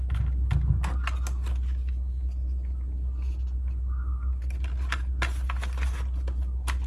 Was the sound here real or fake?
real